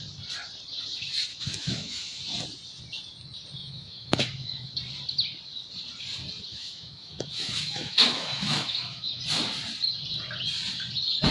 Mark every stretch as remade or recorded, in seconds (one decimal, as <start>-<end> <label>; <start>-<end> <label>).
0.0-1.3 recorded; 1.3-2.2 remade; 2.2-3.6 recorded; 3.6-4.7 remade; 4.7-6.5 recorded; 6.5-9.2 remade; 9.2-11.3 recorded